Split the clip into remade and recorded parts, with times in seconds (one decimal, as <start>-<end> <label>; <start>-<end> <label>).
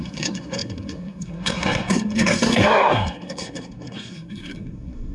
0.0-5.1 remade